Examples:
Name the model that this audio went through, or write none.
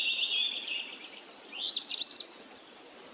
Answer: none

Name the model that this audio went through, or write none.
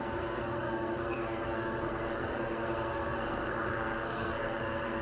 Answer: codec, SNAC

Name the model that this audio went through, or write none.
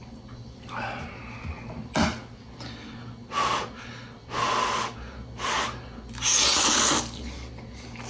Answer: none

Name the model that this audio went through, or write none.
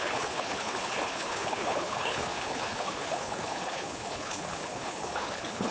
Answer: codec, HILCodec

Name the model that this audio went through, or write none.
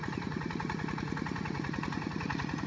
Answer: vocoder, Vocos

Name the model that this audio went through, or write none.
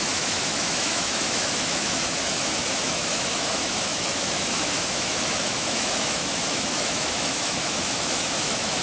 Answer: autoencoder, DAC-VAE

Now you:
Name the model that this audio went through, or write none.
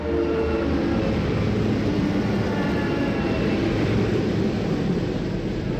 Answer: none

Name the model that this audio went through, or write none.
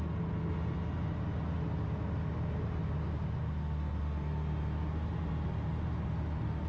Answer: none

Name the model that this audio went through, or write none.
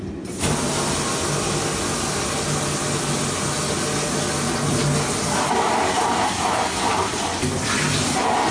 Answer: none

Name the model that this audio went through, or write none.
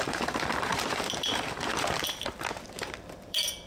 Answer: vocoder, BigVGAN v2